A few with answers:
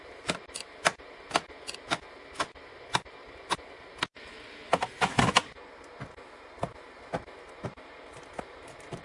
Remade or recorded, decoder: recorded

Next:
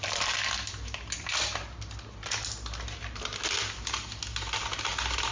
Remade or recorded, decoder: recorded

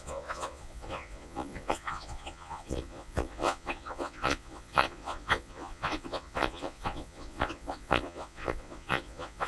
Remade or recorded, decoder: remade, vocoder, Vocos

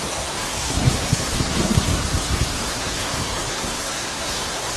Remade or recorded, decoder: remade, codec, SNAC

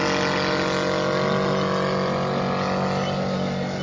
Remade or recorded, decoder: recorded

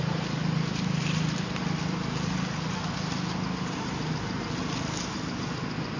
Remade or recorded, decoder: recorded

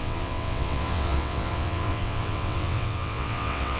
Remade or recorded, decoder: remade, vocoder, WaveNeXt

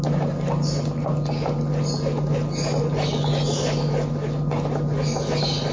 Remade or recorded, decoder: recorded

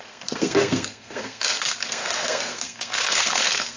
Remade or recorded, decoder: remade, codec, SNAC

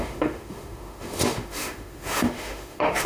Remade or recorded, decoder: remade, autoencoder, DAC-VAE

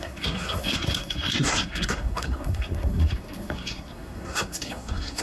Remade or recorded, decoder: remade, codec, SNAC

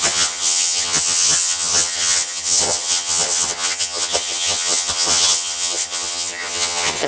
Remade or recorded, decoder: remade, vocoder, HiFi-GAN